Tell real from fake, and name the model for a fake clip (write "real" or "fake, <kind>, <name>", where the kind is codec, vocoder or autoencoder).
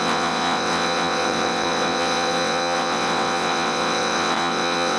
fake, vocoder, WaveNeXt